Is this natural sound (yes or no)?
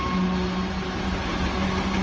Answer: yes